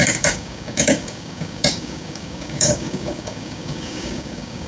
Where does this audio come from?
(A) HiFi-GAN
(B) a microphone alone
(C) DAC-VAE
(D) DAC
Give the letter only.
D